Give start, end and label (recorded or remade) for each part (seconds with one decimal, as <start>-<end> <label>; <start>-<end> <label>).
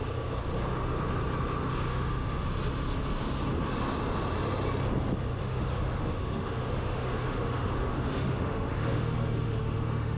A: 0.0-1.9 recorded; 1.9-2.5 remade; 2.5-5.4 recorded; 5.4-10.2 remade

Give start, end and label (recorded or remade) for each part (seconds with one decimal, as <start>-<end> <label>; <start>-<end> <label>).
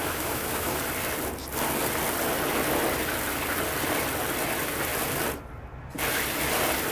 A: 0.0-0.8 remade; 0.8-6.9 recorded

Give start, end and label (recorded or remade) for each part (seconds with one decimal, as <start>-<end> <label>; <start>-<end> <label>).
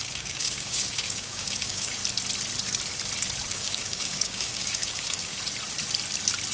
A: 0.0-2.0 remade; 2.0-3.5 recorded; 3.5-5.3 remade; 5.3-6.5 recorded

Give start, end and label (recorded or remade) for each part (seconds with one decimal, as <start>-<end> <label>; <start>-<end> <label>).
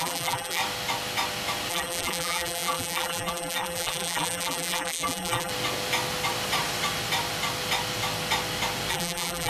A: 0.0-0.6 remade; 0.6-1.7 recorded; 1.7-5.5 remade; 5.5-8.9 recorded; 8.9-9.5 remade